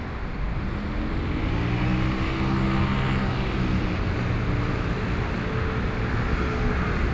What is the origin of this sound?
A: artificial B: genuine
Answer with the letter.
B